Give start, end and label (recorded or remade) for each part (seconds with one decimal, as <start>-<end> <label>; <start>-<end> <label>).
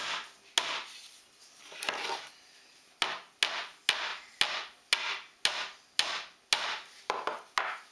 0.0-7.9 recorded